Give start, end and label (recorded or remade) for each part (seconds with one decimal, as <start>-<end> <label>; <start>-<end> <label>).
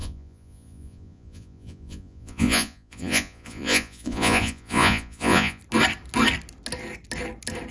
0.0-5.6 remade; 5.6-7.7 recorded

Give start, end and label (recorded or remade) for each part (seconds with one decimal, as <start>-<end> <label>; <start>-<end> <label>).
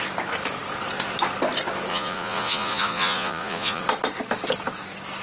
0.0-1.9 recorded; 1.9-3.8 remade; 3.8-5.2 recorded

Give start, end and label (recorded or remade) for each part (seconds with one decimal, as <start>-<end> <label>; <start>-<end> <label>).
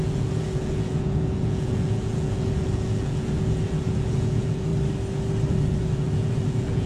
0.0-4.7 remade; 4.7-5.5 recorded; 5.5-6.9 remade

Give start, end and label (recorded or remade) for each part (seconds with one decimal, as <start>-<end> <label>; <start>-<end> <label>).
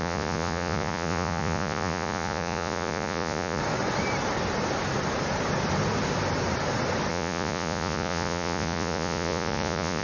0.0-3.6 remade; 3.6-7.1 recorded; 7.1-10.0 remade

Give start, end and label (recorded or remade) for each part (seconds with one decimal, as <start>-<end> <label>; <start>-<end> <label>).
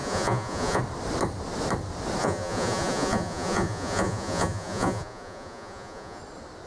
0.0-0.8 remade; 0.8-2.2 recorded; 2.2-6.2 remade; 6.2-6.7 recorded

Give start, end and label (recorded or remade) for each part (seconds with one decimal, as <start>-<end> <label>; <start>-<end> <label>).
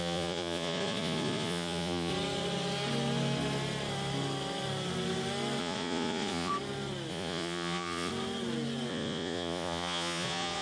0.0-2.1 remade; 2.1-5.6 recorded; 5.6-6.5 remade; 6.5-7.1 recorded; 7.1-8.1 remade; 8.1-8.9 recorded; 8.9-10.6 remade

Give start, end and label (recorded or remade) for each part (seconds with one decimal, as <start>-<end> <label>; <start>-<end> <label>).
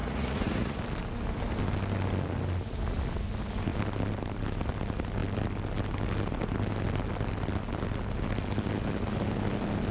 0.0-0.8 remade; 0.8-9.9 recorded